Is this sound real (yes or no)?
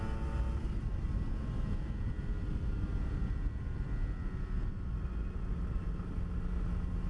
yes